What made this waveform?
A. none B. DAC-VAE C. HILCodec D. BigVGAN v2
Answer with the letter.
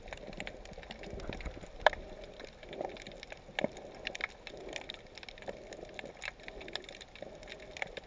A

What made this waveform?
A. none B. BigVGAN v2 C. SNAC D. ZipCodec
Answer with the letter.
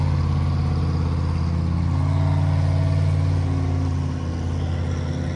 A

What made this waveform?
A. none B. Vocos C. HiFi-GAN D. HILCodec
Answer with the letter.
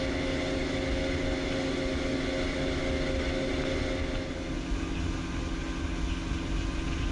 A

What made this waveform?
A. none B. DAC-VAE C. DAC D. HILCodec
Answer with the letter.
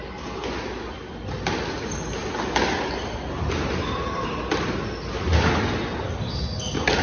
A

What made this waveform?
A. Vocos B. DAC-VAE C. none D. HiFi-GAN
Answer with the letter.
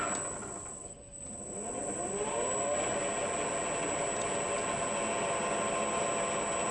C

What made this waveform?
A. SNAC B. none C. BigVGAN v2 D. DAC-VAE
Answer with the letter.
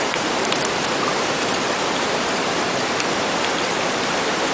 C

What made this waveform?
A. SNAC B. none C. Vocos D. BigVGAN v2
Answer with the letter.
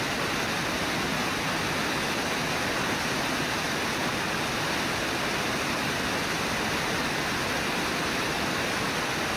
B